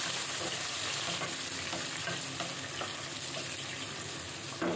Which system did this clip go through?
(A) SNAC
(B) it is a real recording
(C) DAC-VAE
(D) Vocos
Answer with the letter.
B